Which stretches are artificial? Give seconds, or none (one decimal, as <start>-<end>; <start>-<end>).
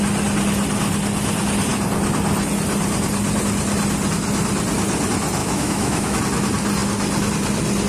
5.4-6.2